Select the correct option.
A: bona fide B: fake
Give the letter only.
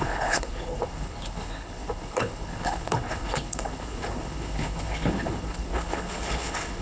B